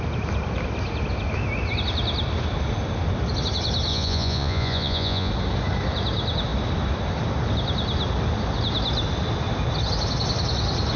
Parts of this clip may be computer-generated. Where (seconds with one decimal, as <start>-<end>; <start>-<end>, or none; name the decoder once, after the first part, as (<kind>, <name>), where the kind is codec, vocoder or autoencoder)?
3.9-5.3 (vocoder, Vocos)